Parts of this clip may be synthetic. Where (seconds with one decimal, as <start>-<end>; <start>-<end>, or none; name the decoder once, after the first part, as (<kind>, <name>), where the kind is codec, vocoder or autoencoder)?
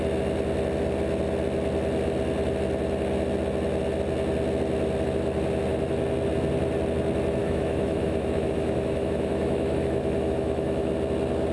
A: 7.4-10.9 (autoencoder, DAC-VAE)